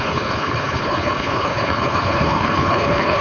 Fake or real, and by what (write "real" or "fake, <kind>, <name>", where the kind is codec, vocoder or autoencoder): fake, codec, HILCodec